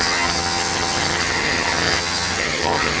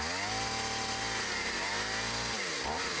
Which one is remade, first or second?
first